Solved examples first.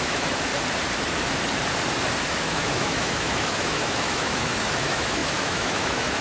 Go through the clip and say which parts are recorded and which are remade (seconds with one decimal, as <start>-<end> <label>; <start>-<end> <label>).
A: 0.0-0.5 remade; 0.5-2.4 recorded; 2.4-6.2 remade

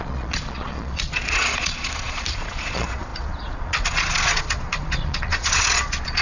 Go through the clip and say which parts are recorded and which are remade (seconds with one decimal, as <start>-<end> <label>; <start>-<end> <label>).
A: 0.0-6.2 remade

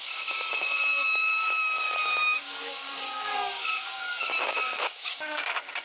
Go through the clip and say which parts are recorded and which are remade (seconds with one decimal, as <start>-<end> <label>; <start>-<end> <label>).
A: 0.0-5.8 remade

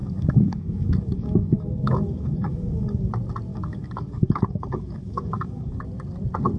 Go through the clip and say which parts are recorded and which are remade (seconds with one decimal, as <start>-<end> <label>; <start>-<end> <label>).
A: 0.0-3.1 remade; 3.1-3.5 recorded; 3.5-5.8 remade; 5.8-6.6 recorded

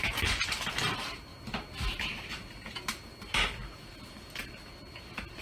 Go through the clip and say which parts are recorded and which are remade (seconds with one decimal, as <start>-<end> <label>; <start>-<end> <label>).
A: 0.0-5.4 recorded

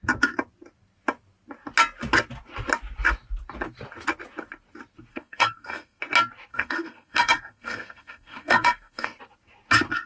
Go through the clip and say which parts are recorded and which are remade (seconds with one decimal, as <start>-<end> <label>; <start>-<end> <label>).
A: 0.0-5.1 recorded; 5.1-6.0 remade; 6.0-6.5 recorded; 6.5-9.2 remade; 9.2-10.1 recorded

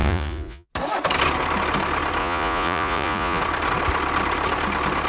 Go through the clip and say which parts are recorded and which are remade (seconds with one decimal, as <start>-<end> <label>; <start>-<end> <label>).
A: 0.0-0.7 remade; 0.7-2.2 recorded; 2.2-3.4 remade; 3.4-5.1 recorded

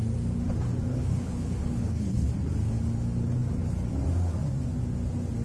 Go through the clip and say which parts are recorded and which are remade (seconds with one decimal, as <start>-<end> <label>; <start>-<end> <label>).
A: 0.0-0.9 recorded; 0.9-2.3 remade; 2.3-5.4 recorded